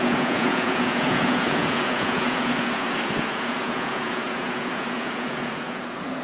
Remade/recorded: remade